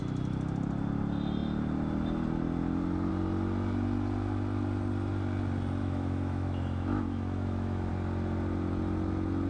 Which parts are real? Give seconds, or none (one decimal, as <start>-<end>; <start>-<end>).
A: 0.0-5.8; 7.9-9.5